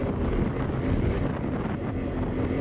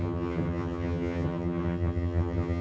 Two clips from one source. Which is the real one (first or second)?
first